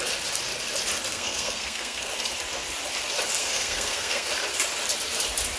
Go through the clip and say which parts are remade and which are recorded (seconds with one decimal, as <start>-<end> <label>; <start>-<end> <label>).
0.0-1.1 recorded; 1.1-2.1 remade; 2.1-3.4 recorded; 3.4-4.3 remade; 4.3-5.6 recorded